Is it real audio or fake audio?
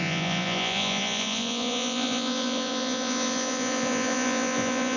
fake